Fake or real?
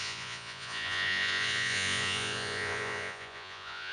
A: fake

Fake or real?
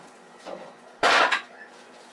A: fake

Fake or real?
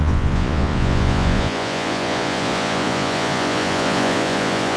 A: fake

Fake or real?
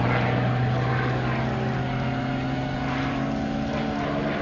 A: real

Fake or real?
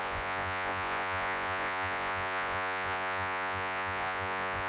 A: fake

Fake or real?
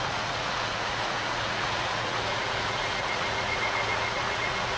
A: fake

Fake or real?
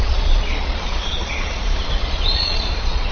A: fake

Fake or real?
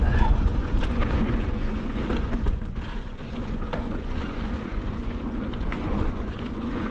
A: fake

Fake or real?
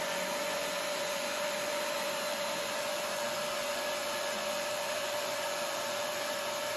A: fake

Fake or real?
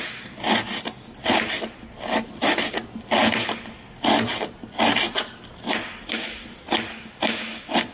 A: real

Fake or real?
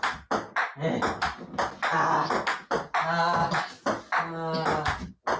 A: real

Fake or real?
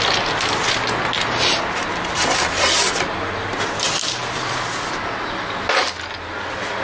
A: real